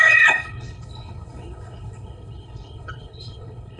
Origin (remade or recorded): remade